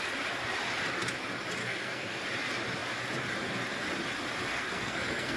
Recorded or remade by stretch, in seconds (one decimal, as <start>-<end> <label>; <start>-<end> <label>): 0.0-1.6 recorded; 1.6-2.2 remade; 2.2-4.5 recorded; 4.5-5.4 remade